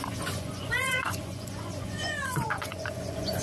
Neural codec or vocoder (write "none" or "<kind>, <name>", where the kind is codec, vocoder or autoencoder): vocoder, Vocos